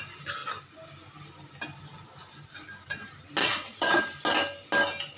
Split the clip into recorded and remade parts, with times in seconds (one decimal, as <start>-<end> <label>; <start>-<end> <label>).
0.0-3.4 recorded; 3.4-4.0 remade; 4.0-5.2 recorded